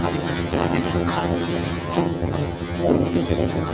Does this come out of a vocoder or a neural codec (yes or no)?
yes